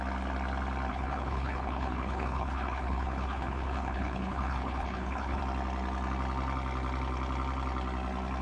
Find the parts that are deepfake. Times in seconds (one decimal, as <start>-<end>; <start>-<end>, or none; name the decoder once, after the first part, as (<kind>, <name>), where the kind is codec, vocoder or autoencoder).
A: 0.9-5.4 (codec, HILCodec)